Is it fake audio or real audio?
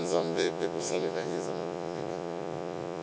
fake